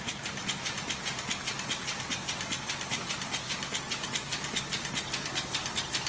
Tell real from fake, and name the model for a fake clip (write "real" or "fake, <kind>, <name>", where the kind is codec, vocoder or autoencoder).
real